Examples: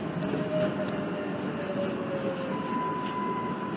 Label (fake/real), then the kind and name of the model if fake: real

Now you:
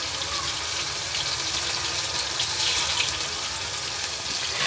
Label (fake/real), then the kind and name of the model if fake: real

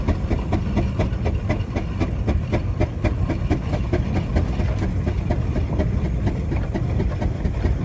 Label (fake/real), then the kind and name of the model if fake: real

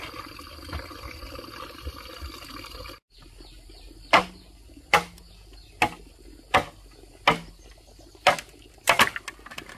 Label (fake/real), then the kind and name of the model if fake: real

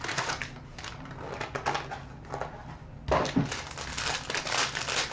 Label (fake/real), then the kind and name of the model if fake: real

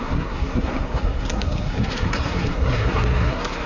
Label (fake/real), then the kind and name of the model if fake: fake, codec, SNAC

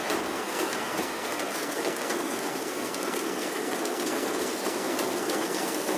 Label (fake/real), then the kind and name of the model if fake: fake, codec, SNAC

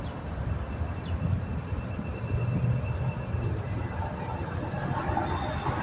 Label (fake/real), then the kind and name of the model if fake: real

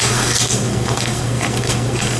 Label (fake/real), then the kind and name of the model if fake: fake, codec, SNAC